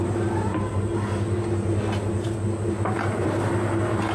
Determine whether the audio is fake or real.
fake